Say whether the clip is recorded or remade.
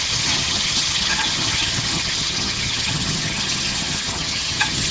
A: remade